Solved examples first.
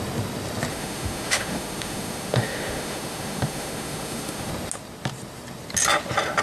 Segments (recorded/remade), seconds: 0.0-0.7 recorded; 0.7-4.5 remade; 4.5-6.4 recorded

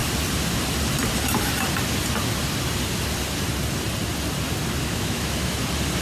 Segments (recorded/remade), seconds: 0.0-4.8 recorded; 4.8-5.6 remade; 5.6-6.0 recorded

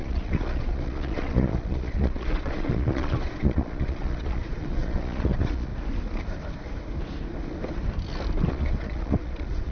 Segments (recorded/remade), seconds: 0.0-5.7 remade; 5.7-8.5 recorded; 8.5-9.7 remade

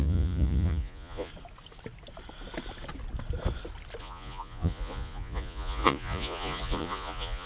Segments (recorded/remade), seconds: 0.0-1.3 remade; 1.3-4.0 recorded; 4.0-7.5 remade

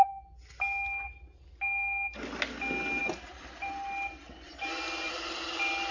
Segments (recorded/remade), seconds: 0.0-5.9 recorded

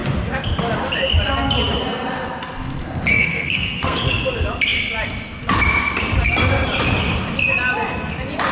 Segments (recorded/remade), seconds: 0.0-3.1 recorded; 3.1-4.1 remade; 4.1-8.5 recorded

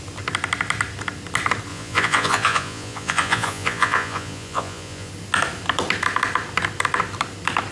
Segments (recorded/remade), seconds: 0.0-1.7 recorded; 1.7-5.1 remade; 5.1-7.7 recorded

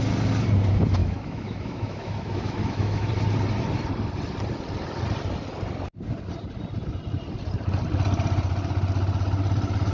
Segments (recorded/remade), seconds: 0.0-1.0 recorded; 1.0-3.1 remade; 3.1-9.9 recorded